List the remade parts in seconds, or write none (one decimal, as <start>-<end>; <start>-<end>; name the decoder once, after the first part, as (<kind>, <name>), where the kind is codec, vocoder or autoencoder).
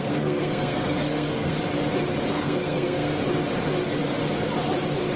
0.0-1.5 (codec, SNAC); 2.3-3.1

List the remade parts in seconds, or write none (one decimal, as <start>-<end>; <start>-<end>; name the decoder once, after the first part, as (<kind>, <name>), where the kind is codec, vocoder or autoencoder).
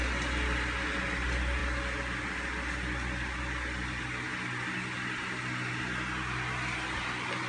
none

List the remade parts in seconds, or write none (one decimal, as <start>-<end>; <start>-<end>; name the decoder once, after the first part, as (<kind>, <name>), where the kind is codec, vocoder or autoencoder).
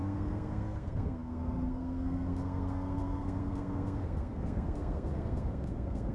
0.0-6.1 (codec, SNAC)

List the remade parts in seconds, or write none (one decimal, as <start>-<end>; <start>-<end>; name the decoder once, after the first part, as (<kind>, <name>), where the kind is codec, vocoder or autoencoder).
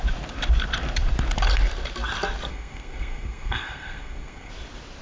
2.5-4.5 (codec, SNAC)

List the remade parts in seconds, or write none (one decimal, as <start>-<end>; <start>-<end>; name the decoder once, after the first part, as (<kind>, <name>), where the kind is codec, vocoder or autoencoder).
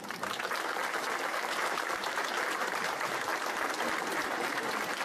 0.0-3.3 (vocoder, BigVGAN v2); 4.0-5.0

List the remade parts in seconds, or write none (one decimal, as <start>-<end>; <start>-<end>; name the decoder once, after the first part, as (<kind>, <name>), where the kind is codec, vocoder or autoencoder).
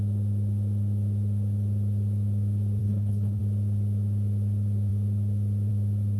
2.8-3.4 (codec, HILCodec)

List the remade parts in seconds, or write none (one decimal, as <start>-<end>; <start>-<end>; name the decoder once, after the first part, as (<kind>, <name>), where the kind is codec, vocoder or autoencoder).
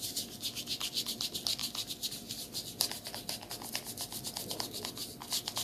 none